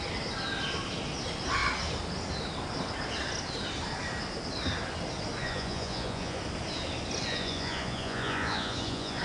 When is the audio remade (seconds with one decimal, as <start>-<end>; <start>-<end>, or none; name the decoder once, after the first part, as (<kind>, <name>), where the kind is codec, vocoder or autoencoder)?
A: 5.4-6.4 (vocoder, Vocos); 7.3-9.2